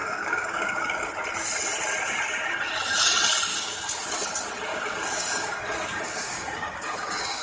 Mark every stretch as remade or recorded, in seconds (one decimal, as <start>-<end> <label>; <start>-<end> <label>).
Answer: 0.0-1.1 remade; 1.1-3.5 recorded; 3.5-4.0 remade; 4.0-4.7 recorded; 4.7-7.4 remade